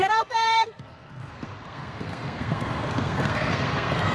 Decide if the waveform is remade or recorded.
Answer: remade